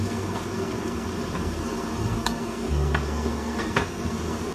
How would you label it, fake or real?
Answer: fake